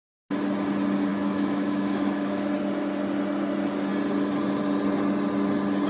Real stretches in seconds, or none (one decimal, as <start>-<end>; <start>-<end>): 0.0-1.1; 2.5-5.9